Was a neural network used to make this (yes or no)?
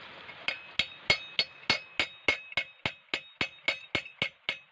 no